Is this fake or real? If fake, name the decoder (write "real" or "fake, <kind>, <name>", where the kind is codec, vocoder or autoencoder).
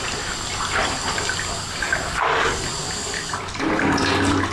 fake, vocoder, BigVGAN v2